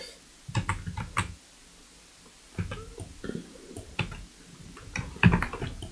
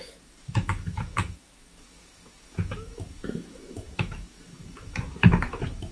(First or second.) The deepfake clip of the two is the second